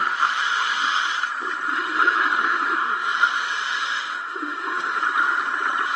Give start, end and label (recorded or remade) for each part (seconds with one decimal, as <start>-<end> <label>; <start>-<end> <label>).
0.0-1.0 remade; 1.0-1.7 recorded; 1.7-5.0 remade; 5.0-6.0 recorded